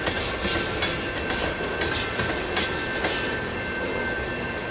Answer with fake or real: real